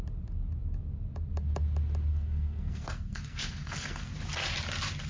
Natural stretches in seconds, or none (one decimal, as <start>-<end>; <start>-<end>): 0.0-2.1; 4.1-5.1